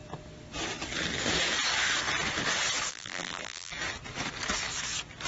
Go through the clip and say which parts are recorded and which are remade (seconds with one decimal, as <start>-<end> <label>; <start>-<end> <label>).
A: 0.0-2.9 recorded; 2.9-3.7 remade; 3.7-5.3 recorded